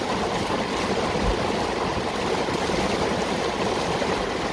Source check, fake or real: fake